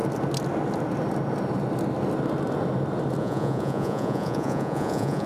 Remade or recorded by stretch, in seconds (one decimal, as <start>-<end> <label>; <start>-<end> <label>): 0.0-3.2 recorded; 3.2-5.3 remade

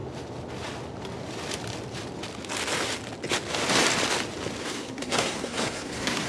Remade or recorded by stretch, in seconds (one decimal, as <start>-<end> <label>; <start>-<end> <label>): 0.0-4.6 recorded; 4.6-6.3 remade

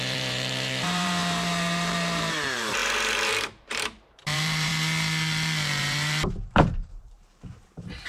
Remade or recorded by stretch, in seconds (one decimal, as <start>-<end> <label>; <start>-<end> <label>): 0.0-4.7 remade; 4.7-5.8 recorded; 5.8-8.1 remade

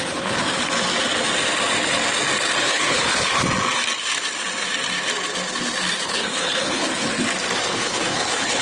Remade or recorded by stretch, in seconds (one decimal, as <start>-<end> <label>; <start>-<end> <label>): 0.0-0.4 remade; 0.4-2.6 recorded; 2.6-3.4 remade; 3.4-5.9 recorded; 5.9-7.1 remade; 7.1-7.7 recorded; 7.7-8.6 remade